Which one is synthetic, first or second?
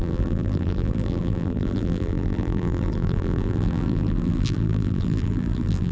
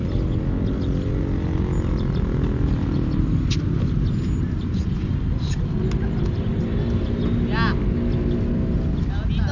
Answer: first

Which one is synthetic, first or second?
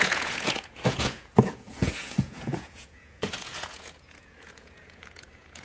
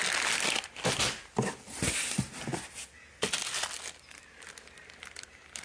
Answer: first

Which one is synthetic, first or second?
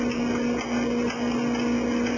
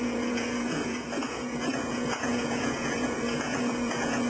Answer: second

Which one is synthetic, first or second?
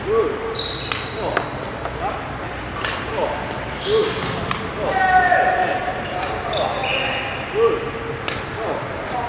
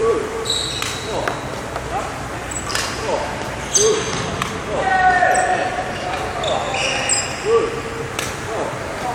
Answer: second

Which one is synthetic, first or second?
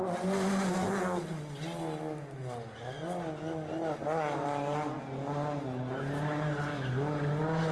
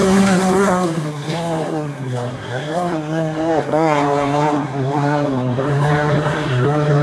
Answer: second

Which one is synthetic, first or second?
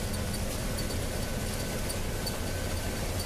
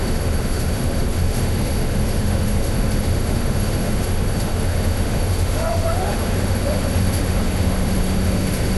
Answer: second